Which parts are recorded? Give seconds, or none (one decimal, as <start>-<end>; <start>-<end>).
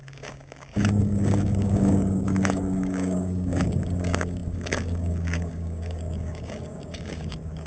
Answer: none